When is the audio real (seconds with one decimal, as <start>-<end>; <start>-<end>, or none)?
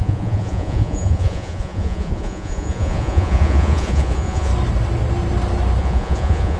4.5-5.8